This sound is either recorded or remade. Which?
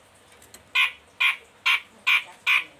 recorded